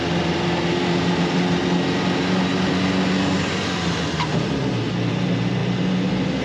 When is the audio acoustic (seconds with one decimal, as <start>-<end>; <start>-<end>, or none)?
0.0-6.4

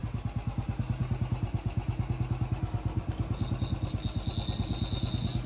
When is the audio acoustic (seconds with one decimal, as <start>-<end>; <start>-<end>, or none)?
0.0-5.5

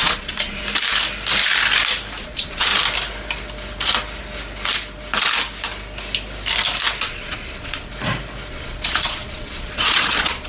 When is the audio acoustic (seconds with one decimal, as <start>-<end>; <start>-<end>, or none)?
0.6-2.2; 2.7-7.0; 7.9-8.5